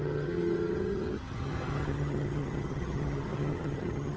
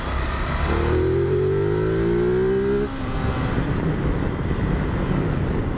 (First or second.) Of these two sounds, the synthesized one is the first